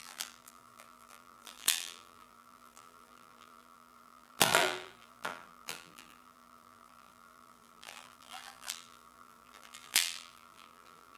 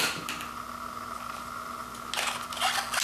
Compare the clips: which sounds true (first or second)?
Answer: second